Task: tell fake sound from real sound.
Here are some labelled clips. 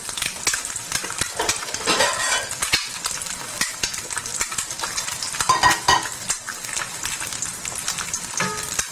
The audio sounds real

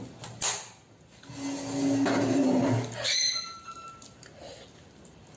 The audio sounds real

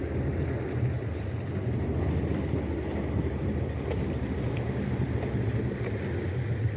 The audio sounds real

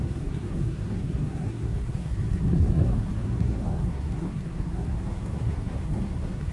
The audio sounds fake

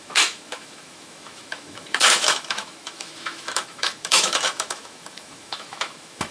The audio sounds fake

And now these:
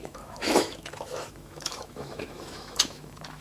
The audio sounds fake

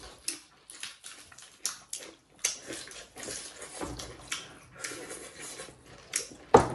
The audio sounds real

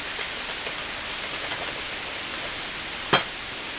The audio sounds real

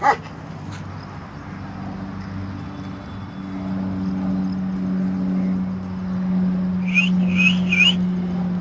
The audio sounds real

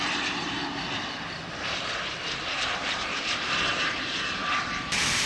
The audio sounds fake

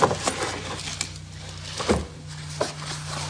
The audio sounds real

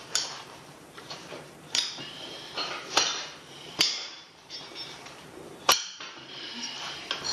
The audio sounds fake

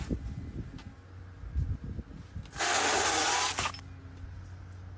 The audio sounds real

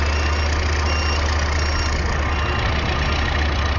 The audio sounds real